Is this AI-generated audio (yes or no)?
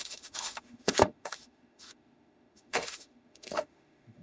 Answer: yes